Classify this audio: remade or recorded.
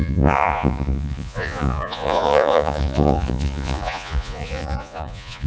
remade